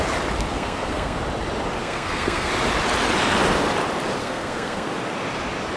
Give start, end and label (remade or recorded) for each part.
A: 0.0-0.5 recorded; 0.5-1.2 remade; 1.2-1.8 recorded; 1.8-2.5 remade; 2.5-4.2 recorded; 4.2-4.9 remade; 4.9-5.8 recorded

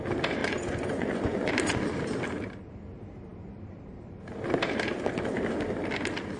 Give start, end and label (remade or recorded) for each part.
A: 0.0-0.4 recorded; 0.4-1.5 remade; 1.5-6.4 recorded

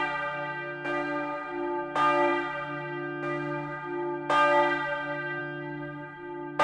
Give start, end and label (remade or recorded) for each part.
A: 0.0-6.6 recorded

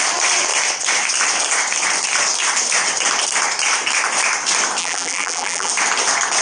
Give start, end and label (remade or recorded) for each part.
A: 0.0-4.8 recorded; 4.8-5.7 remade; 5.7-6.4 recorded

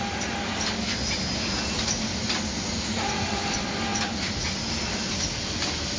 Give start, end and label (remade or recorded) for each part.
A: 0.0-6.0 recorded